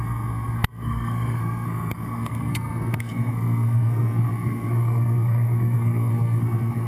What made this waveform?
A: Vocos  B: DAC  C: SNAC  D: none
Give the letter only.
C